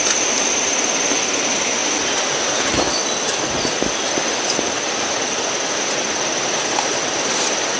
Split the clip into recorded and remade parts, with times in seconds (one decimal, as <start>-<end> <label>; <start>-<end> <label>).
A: 0.0-7.8 recorded